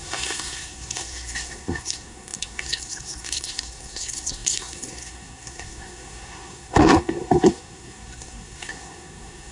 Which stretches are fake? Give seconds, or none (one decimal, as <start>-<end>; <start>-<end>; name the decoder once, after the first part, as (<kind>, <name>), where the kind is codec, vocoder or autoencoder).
0.0-9.5 (codec, SNAC)